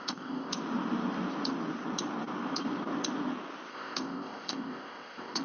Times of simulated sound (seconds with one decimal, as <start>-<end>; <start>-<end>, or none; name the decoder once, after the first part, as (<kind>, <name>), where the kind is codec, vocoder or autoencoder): 0.0-0.5 (codec, ZipCodec); 3.7-5.4

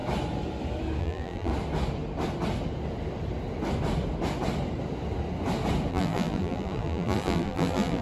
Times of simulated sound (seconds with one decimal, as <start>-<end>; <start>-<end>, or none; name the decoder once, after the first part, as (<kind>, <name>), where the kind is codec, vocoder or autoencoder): 1.0-1.5 (vocoder, BigVGAN v2); 5.9-8.0

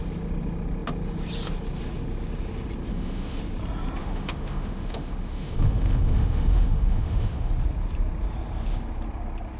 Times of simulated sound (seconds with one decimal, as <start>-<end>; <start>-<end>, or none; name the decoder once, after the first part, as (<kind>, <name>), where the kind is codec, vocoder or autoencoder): 2.9-3.4 (autoencoder, DAC-VAE); 4.0-7.5

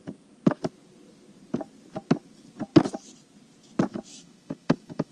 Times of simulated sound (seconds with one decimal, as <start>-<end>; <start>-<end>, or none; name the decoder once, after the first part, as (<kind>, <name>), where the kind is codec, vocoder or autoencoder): 4.1-5.1 (autoencoder, DAC-VAE)

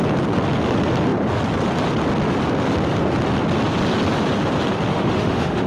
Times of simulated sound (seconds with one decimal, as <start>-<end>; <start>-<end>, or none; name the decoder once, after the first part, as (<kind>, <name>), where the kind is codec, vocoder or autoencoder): 4.9-5.7 (autoencoder, DAC-VAE)

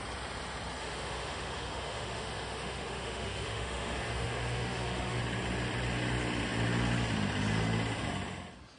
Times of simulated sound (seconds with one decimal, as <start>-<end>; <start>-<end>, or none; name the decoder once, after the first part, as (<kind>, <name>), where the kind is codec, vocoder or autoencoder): 0.8-5.2 (autoencoder, DAC-VAE)